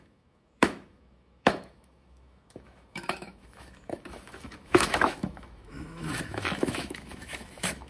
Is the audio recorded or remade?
remade